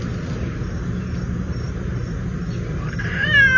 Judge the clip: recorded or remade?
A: recorded